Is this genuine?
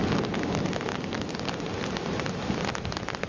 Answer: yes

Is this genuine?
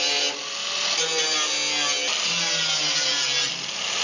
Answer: yes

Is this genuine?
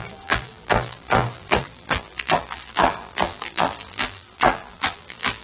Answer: no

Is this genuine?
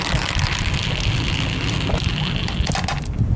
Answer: yes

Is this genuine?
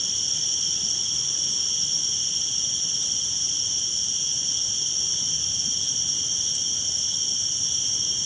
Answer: yes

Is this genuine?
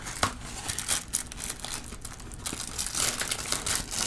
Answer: yes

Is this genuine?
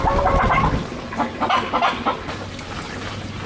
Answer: yes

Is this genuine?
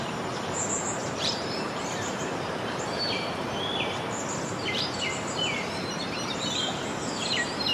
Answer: no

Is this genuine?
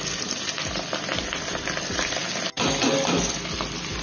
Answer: yes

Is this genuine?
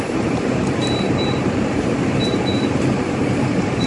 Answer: no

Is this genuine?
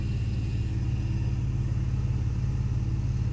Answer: yes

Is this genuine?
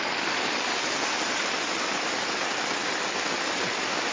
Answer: no